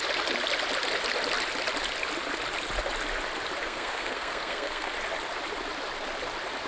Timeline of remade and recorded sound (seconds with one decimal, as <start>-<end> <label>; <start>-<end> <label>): 0.0-3.6 recorded; 3.6-4.9 remade; 4.9-6.7 recorded